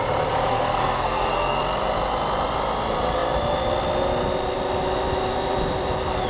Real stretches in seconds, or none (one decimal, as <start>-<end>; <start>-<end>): 0.0-0.5; 1.6-6.3